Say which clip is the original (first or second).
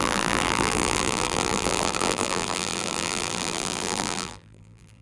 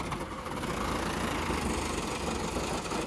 second